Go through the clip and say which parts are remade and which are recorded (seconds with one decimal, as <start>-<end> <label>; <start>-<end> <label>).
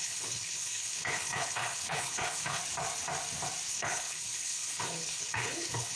0.0-2.6 remade; 2.6-3.7 recorded; 3.7-6.0 remade